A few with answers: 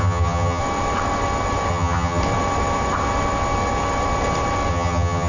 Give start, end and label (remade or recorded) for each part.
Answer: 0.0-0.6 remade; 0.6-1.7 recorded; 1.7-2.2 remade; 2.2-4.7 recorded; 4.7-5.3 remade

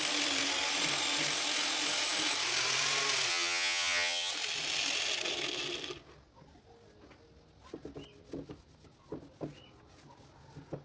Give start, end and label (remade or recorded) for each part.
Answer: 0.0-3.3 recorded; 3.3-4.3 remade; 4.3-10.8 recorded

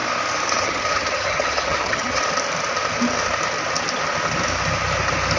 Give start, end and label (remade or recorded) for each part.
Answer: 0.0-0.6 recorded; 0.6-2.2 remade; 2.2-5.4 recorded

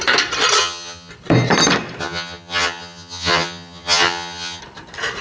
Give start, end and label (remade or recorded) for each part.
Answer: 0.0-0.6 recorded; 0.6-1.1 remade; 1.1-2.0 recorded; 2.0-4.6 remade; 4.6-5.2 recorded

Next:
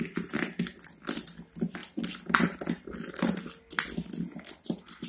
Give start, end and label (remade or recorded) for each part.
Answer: 0.0-5.1 recorded

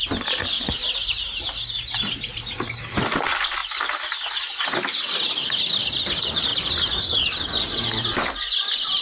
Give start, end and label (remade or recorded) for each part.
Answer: 0.0-9.0 recorded

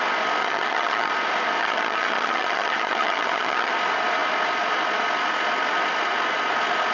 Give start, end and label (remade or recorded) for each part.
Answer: 0.0-0.4 recorded; 0.4-1.1 remade; 1.1-1.6 recorded; 1.6-3.7 remade; 3.7-6.9 recorded

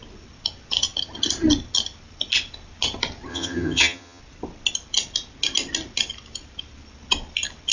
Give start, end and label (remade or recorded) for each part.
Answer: 0.0-3.3 recorded; 3.3-4.2 remade; 4.2-7.7 recorded